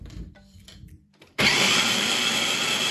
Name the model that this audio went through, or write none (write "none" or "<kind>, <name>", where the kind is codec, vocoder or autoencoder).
vocoder, BigVGAN v2